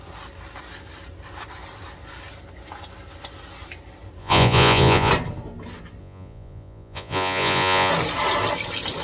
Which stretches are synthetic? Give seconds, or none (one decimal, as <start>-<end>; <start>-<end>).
4.2-5.1; 6.0-7.9